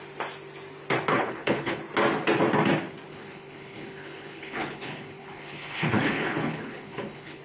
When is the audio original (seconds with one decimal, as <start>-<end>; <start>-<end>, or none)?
0.0-1.1; 1.8-3.1